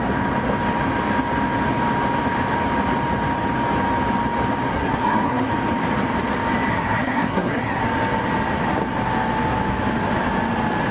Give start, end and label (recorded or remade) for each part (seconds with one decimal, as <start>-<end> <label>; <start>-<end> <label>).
0.0-4.7 recorded; 4.7-5.5 remade; 5.5-6.7 recorded; 6.7-7.8 remade; 7.8-10.9 recorded